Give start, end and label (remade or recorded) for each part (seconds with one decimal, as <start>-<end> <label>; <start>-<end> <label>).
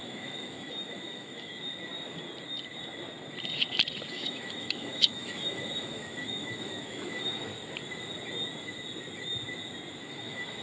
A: 0.0-1.5 remade; 1.5-4.1 recorded; 4.1-7.5 remade; 7.5-10.1 recorded; 10.1-10.6 remade